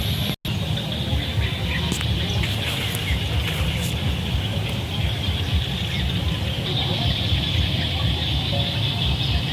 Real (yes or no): yes